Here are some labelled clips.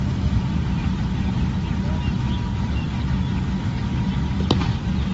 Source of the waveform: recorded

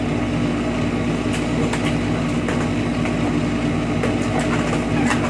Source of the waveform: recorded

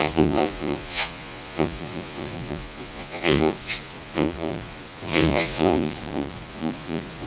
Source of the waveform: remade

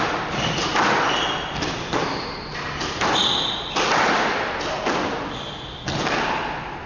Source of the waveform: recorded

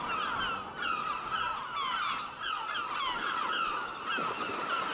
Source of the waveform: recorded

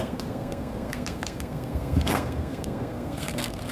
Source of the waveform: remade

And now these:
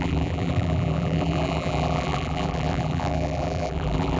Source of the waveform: remade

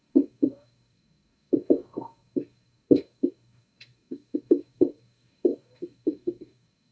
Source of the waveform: remade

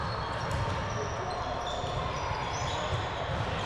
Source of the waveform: recorded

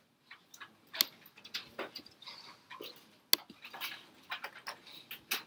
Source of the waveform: recorded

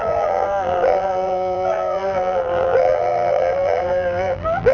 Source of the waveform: remade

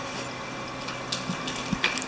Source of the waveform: recorded